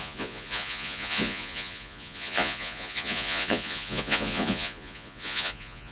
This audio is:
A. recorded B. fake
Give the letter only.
B